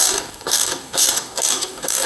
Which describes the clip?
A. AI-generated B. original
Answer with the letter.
A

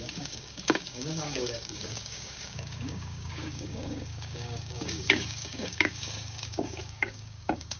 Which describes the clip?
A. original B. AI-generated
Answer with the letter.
B